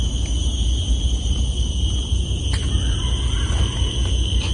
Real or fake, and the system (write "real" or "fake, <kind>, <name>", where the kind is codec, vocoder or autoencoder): real